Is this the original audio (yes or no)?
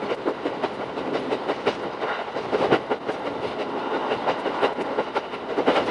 yes